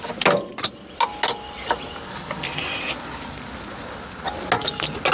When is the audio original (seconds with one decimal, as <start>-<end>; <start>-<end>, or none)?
0.0-5.1